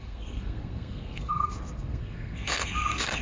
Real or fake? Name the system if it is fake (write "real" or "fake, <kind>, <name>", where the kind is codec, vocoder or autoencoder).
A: fake, codec, SNAC